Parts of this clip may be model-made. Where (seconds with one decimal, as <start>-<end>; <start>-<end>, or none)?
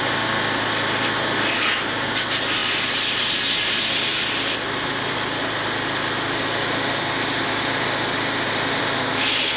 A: none